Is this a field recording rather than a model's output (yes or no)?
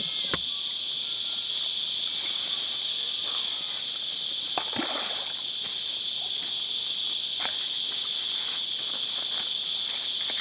yes